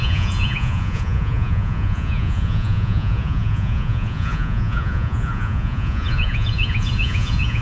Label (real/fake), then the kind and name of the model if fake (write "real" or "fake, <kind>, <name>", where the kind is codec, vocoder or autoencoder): fake, vocoder, Vocos